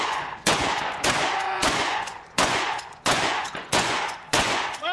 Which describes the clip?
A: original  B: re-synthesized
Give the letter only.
B